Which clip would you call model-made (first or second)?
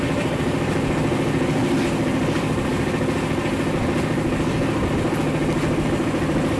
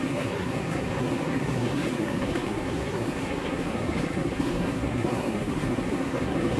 second